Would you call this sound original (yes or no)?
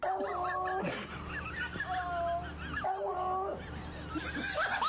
yes